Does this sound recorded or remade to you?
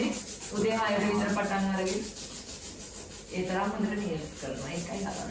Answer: recorded